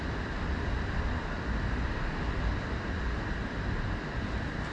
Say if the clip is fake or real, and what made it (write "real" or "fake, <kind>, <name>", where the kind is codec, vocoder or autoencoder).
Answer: real